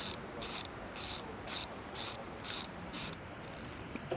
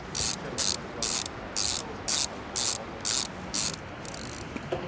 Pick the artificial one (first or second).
first